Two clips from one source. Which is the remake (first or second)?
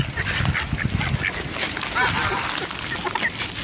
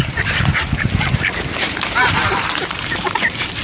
second